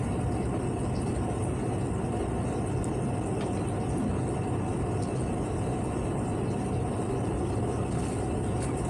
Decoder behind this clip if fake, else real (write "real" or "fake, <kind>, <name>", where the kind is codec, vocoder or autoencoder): real